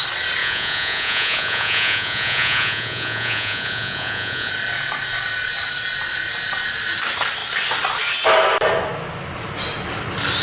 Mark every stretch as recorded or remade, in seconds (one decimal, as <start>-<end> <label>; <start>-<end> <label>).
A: 0.0-0.4 recorded; 0.4-4.5 remade; 4.5-10.4 recorded